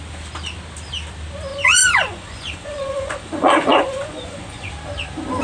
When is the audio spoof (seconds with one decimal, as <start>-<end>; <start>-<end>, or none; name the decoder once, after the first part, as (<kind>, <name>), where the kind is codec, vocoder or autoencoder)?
1.5-4.7 (vocoder, Vocos)

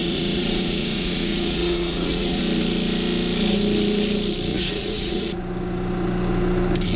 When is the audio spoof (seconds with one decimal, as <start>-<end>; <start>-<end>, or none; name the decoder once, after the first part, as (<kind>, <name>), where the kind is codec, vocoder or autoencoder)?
0.0-2.4 (vocoder, Vocos); 4.5-5.4

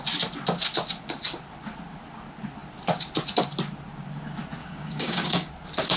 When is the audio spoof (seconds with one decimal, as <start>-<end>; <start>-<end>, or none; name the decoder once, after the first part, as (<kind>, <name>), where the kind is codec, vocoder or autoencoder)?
4.6-5.5 (codec, DAC)

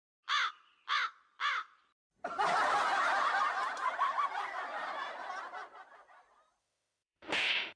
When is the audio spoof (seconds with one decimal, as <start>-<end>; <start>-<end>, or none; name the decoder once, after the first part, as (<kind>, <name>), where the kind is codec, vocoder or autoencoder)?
6.6-7.8 (autoencoder, DAC-VAE)